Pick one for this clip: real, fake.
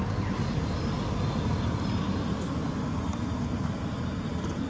real